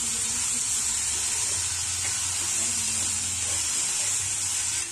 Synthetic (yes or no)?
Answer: no